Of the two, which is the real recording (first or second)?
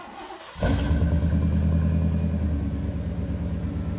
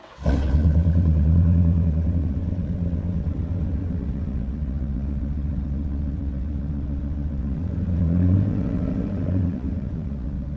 first